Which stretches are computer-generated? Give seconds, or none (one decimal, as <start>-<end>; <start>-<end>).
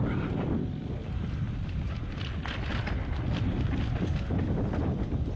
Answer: none